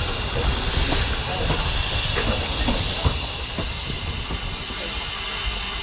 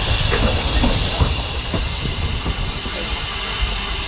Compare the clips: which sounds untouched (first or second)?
first